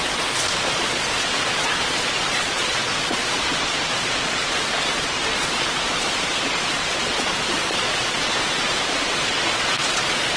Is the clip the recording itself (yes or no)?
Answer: no